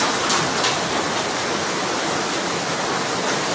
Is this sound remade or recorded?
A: recorded